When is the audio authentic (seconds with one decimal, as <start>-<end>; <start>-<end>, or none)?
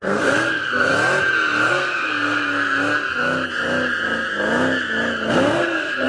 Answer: 0.9-1.7; 2.4-5.3